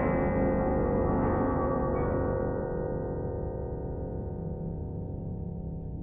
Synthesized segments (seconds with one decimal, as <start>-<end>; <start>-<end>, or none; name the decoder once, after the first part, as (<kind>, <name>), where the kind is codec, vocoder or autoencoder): 0.7-4.3 (vocoder, BigVGAN v2); 4.8-5.6